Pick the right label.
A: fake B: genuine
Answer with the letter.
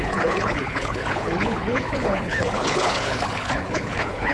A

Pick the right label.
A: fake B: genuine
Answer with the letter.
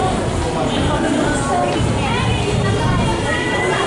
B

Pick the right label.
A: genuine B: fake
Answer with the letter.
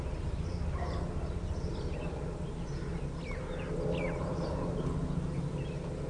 A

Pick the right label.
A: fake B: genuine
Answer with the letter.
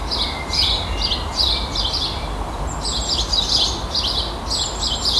B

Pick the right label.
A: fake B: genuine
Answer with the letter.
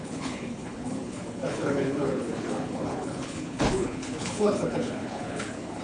A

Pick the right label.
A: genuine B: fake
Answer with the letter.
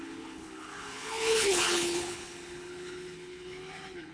B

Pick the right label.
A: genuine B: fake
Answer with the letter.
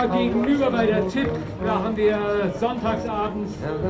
A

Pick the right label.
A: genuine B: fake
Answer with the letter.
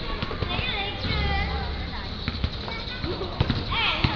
A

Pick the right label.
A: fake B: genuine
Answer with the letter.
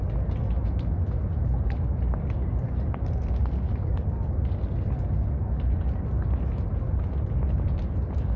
B